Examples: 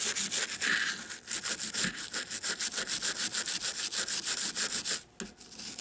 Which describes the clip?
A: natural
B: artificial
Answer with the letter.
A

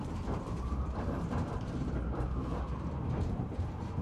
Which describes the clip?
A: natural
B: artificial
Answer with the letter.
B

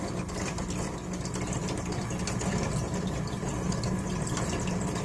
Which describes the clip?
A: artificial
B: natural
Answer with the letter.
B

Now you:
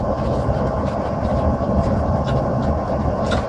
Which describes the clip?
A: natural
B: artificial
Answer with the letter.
B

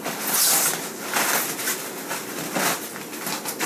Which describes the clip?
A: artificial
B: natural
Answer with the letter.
B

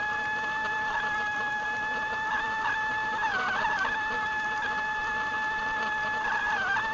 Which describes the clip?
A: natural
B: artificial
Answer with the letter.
B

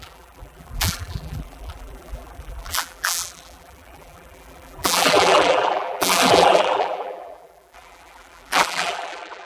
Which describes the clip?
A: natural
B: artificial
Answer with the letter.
B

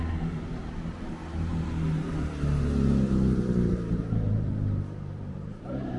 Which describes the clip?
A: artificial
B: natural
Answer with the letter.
A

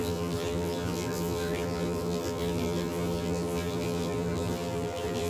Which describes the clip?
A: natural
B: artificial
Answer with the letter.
B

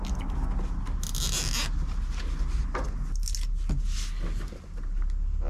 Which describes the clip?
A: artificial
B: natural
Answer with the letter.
B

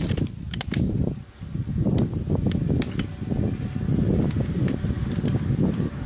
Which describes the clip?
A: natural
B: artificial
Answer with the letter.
A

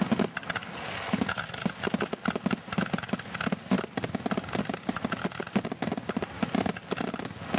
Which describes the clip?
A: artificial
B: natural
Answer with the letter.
B